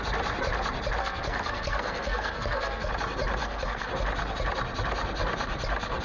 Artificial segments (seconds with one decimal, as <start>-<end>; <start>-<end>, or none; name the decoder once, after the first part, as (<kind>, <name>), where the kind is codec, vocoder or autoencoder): 1.0-2.9 (codec, SNAC); 3.4-3.9